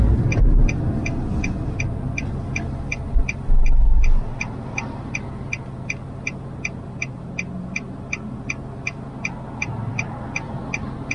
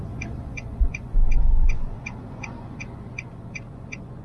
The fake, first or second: second